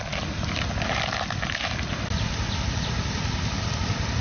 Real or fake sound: real